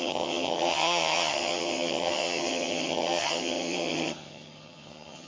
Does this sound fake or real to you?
fake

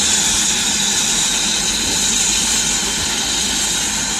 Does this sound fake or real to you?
real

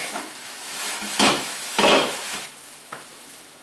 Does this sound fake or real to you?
fake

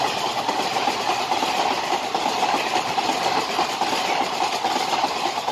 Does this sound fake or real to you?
fake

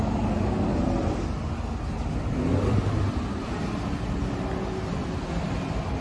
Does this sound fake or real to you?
real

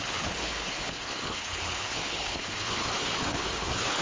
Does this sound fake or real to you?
fake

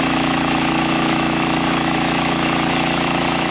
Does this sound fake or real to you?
fake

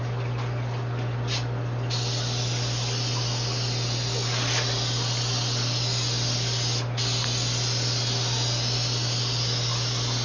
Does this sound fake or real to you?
real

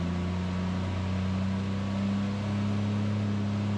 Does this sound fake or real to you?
real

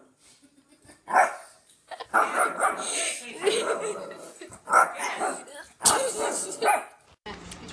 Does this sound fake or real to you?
real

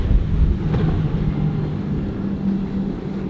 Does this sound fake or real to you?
real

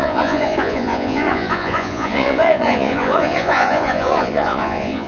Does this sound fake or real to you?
fake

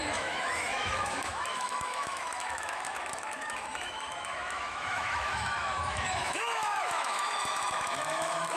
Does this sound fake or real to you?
fake